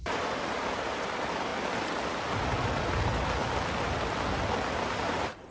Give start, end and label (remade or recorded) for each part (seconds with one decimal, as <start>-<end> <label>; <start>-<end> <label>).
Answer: 0.0-1.5 remade; 1.5-4.8 recorded; 4.8-5.5 remade